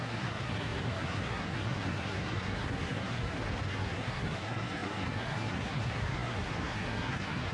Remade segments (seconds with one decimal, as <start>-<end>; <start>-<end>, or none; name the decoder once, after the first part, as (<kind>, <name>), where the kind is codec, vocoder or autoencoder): 0.0-7.5 (codec, SNAC)